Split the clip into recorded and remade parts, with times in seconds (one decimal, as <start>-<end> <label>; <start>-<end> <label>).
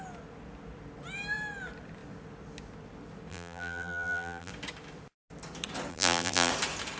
0.0-3.3 recorded; 3.3-4.5 remade; 4.5-5.9 recorded; 5.9-6.5 remade; 6.5-7.0 recorded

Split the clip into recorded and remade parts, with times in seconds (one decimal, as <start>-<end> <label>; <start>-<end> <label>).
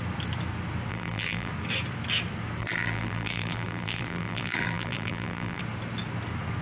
0.0-0.9 recorded; 0.9-1.5 remade; 1.5-2.6 recorded; 2.6-5.6 remade; 5.6-6.6 recorded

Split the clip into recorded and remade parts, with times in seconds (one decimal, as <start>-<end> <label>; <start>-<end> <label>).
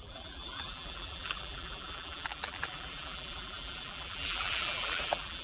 0.0-5.4 remade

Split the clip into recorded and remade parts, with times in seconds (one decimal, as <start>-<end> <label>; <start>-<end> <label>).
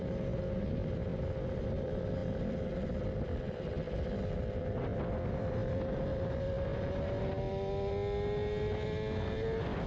0.0-9.9 recorded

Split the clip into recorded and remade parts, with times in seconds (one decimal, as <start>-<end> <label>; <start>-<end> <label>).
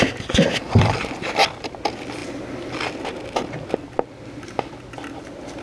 0.0-0.6 recorded; 0.6-1.7 remade; 1.7-5.6 recorded